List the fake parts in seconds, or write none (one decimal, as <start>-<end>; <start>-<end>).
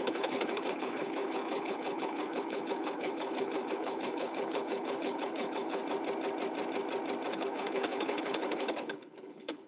0.0-5.8; 7.3-9.7